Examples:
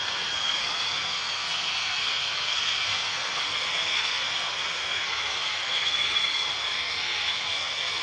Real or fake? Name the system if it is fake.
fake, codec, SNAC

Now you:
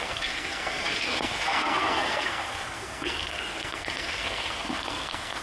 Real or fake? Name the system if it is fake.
fake, codec, SNAC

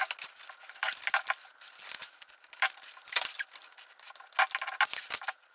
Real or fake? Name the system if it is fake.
real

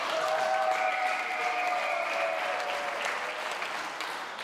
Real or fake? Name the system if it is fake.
real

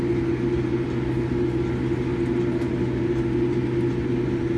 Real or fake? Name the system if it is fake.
real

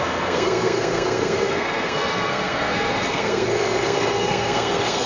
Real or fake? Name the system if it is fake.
fake, codec, SNAC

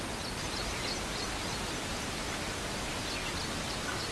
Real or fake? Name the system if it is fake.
real